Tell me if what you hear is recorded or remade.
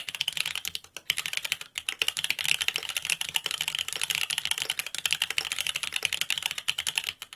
recorded